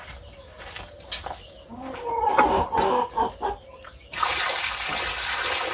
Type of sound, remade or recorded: recorded